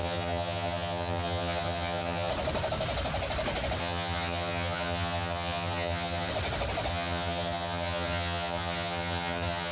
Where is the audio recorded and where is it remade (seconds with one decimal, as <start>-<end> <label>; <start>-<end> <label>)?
0.0-2.3 remade; 2.3-3.8 recorded; 3.8-6.3 remade; 6.3-6.9 recorded; 6.9-9.7 remade